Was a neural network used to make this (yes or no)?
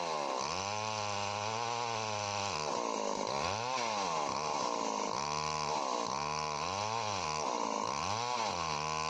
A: no